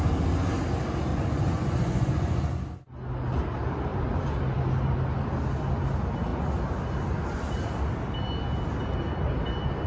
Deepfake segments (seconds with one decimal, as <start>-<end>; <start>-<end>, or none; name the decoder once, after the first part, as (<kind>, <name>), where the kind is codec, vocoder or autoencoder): 1.1-2.5 (vocoder, Vocos)